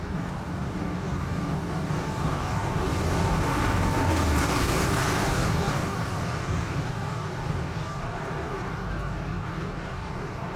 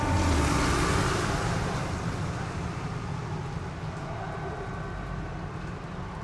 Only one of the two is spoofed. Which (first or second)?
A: first